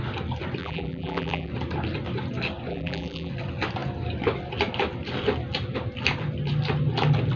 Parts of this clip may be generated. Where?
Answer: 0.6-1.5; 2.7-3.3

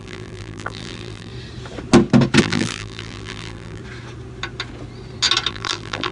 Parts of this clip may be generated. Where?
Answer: 0.0-1.3; 2.4-3.8; 5.5-6.1

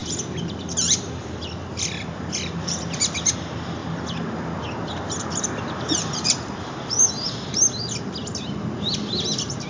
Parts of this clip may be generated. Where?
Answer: 0.0-3.0; 3.8-7.5

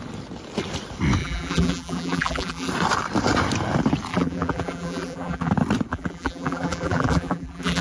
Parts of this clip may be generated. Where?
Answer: 1.2-2.7; 4.1-5.5; 5.9-7.8

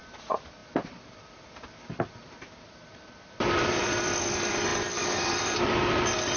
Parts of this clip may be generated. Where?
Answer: 2.9-3.8; 4.7-5.6